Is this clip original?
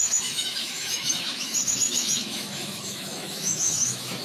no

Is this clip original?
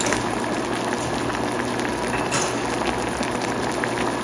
yes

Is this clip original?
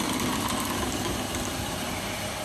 yes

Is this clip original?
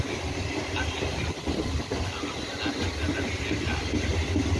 yes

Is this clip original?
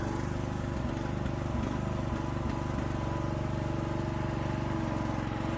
yes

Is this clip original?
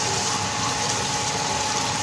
yes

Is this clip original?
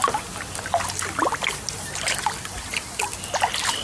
yes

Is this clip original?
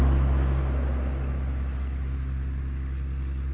yes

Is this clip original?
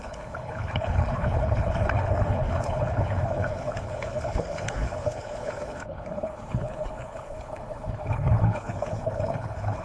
no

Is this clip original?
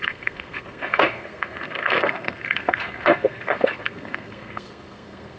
no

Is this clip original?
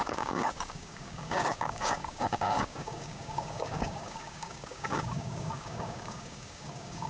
no